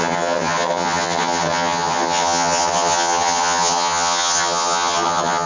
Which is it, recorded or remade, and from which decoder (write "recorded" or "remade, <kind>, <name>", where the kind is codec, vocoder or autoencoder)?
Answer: remade, vocoder, HiFi-GAN